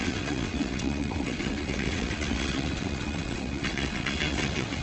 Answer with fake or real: fake